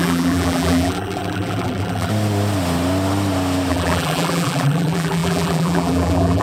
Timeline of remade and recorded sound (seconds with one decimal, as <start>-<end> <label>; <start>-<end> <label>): 0.0-2.1 remade; 2.1-3.7 recorded; 3.7-6.4 remade